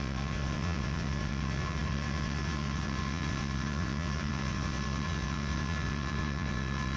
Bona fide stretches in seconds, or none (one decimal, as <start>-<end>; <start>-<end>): none